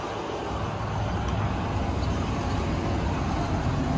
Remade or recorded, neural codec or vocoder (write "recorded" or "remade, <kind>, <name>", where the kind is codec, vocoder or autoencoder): recorded